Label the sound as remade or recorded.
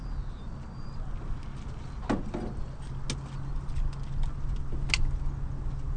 recorded